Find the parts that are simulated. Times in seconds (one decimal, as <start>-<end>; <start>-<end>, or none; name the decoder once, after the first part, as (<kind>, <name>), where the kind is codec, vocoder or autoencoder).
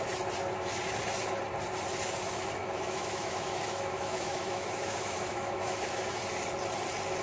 2.6-6.2 (autoencoder, DAC-VAE)